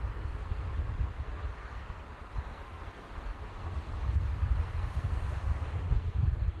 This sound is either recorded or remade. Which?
remade